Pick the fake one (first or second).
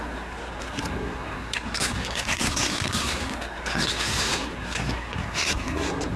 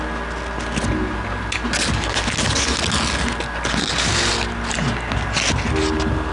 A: first